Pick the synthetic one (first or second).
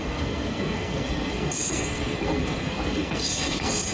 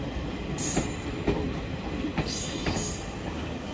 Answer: first